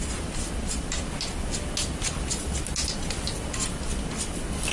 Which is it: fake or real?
real